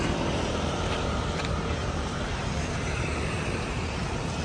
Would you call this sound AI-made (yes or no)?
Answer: yes